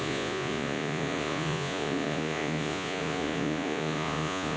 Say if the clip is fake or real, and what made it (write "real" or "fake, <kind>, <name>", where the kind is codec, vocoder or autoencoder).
fake, vocoder, Vocos